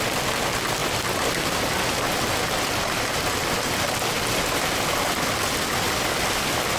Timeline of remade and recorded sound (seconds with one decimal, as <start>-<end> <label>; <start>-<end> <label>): 0.0-6.8 recorded